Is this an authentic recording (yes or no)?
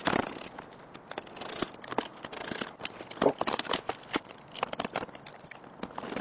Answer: yes